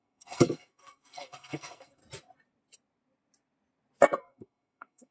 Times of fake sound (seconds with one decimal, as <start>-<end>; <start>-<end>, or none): 0.0-2.0; 4.2-5.1